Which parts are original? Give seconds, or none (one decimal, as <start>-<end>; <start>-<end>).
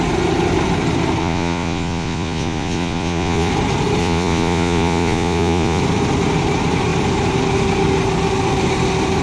0.0-1.2; 3.5-4.0; 5.8-9.2